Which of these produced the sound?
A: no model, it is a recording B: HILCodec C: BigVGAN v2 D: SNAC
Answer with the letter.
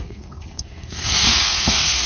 D